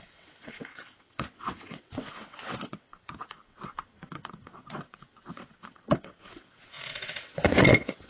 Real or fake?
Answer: fake